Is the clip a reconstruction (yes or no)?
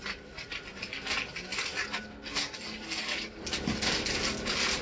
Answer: no